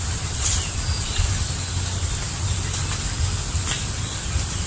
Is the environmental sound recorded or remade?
recorded